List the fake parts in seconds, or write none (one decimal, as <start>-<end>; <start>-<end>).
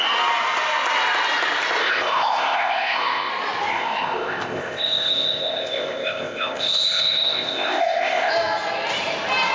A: 1.8-3.3; 3.7-8.3